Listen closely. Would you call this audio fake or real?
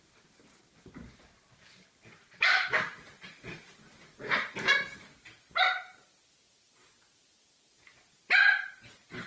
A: real